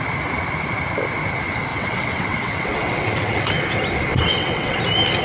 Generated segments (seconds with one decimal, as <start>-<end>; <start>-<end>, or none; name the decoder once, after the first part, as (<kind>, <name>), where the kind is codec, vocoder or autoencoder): 1.7-3.5 (vocoder, WaveNeXt); 4.1-4.8